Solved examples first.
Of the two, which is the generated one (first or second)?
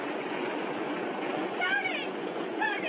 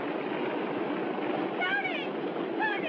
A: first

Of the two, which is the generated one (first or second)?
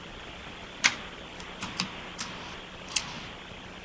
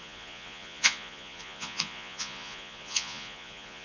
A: second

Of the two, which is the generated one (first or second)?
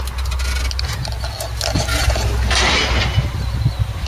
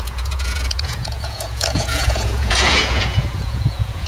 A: second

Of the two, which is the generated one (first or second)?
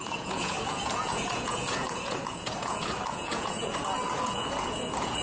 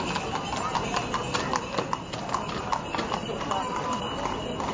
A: first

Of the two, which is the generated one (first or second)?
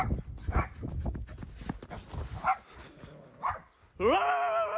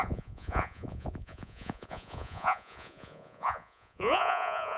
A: second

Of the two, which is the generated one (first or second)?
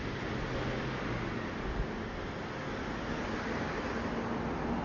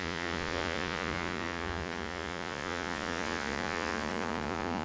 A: second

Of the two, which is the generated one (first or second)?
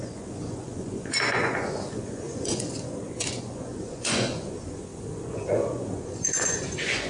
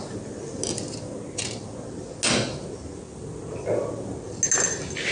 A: first